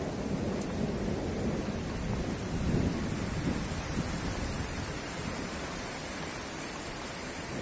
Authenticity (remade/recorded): remade